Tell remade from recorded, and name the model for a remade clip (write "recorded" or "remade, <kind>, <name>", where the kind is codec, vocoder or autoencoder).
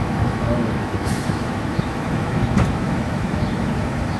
remade, autoencoder, DAC-VAE